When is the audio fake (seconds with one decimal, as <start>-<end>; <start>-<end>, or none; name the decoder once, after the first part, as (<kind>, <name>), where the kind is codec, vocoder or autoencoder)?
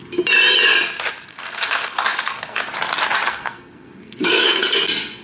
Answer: 1.3-2.6 (codec, SNAC); 3.3-4.6